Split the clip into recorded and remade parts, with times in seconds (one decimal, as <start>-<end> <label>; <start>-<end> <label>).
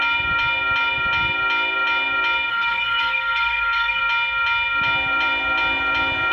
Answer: 0.0-2.5 recorded; 2.5-4.0 remade; 4.0-6.3 recorded